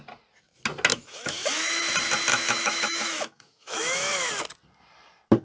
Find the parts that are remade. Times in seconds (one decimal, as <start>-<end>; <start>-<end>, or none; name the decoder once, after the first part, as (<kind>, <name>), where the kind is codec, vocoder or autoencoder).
0.9-1.8 (autoencoder, DAC-VAE); 2.3-4.3